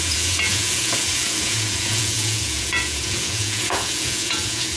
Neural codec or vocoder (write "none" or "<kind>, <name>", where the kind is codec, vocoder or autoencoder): vocoder, Vocos